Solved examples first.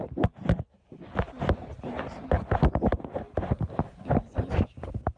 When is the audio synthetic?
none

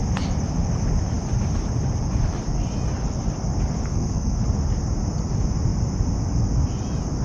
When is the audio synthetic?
3.9-4.4 (codec, SNAC)

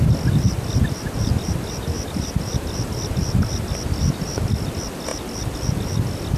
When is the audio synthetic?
none

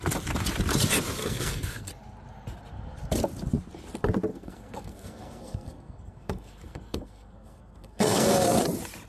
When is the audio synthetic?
1.2-1.9 (codec, SNAC); 4.3-8.6

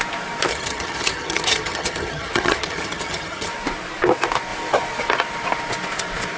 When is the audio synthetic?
0.5-3.5 (vocoder, HiFi-GAN)

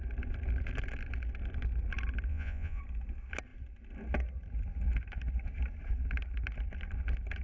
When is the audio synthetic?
2.3-2.8 (vocoder, Vocos)

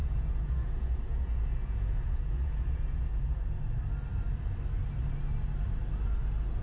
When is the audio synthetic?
0.0-3.2 (vocoder, Vocos)